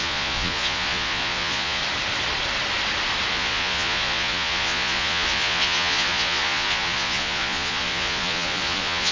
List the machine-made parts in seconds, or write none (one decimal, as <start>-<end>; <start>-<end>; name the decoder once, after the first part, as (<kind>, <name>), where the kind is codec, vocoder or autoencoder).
0.0-1.8 (vocoder, Vocos); 3.3-9.1